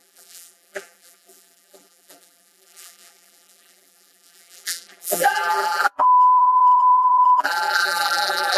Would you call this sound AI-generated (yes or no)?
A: yes